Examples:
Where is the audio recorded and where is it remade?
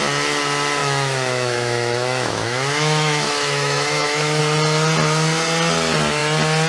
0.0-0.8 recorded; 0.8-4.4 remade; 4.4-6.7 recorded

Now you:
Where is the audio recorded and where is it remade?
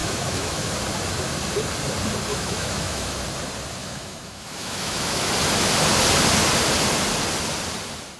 0.0-0.7 remade; 0.7-2.3 recorded; 2.3-3.2 remade; 3.2-3.8 recorded; 3.8-5.3 remade; 5.3-8.2 recorded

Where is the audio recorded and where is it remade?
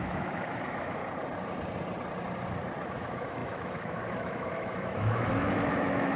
0.0-1.0 remade; 1.0-2.9 recorded; 2.9-6.2 remade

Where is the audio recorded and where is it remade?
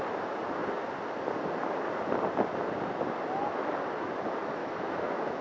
0.0-4.6 recorded; 4.6-5.4 remade